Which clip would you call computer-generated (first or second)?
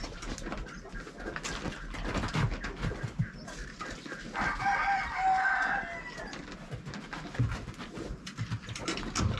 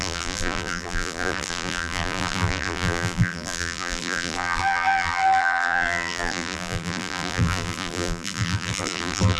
second